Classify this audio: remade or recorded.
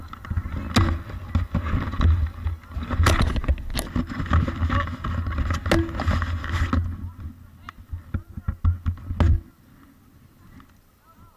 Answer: recorded